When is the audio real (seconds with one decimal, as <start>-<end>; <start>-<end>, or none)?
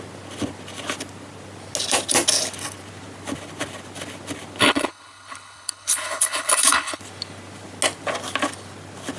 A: 0.0-4.6; 7.0-9.2